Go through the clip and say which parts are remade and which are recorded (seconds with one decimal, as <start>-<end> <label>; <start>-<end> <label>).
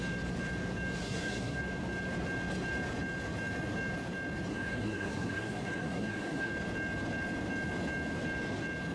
0.0-1.0 recorded; 1.0-1.6 remade; 1.6-4.5 recorded; 4.5-6.5 remade; 6.5-8.9 recorded